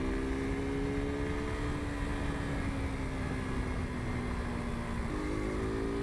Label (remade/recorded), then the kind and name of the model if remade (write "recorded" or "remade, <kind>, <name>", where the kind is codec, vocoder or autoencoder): recorded